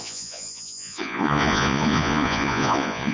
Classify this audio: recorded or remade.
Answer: remade